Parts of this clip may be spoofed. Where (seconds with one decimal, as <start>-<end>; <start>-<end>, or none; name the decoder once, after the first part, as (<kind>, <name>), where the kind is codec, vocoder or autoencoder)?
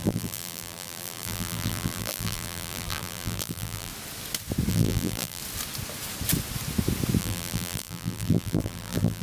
0.0-3.9 (vocoder, BigVGAN v2); 4.7-5.4; 7.2-9.2